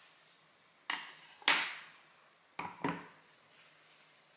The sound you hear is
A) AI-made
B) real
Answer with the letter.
B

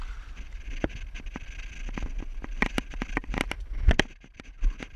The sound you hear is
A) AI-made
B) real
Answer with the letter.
B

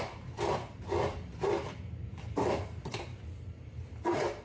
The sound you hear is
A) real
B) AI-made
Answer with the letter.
B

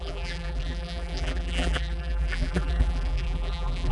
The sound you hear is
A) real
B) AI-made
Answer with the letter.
B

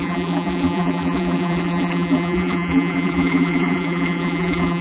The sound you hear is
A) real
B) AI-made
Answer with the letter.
B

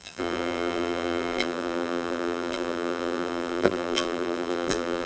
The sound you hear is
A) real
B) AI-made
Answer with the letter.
B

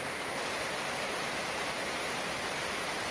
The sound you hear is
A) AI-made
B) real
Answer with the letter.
A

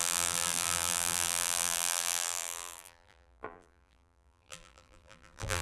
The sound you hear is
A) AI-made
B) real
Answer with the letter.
A